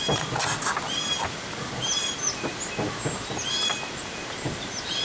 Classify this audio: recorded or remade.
recorded